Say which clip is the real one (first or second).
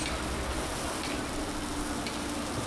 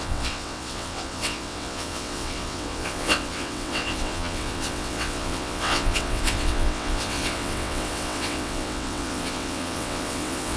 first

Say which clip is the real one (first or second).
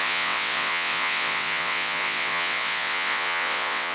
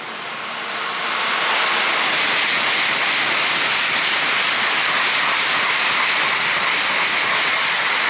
second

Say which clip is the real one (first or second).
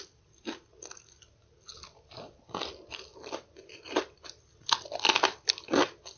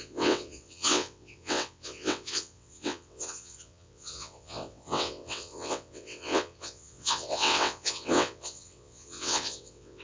first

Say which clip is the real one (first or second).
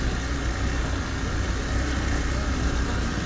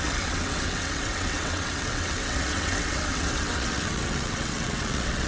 first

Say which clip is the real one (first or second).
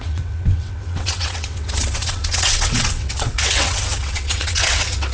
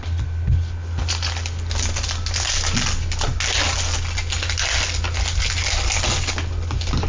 second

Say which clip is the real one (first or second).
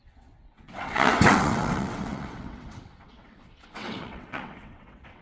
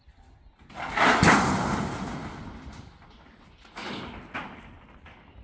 second